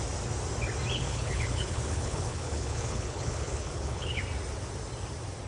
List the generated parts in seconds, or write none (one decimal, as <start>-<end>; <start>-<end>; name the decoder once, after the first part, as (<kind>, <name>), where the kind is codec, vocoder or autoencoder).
0.9-4.2 (codec, HILCodec)